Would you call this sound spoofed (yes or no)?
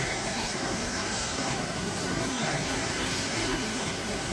yes